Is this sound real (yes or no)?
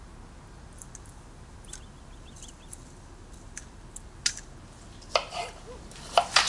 yes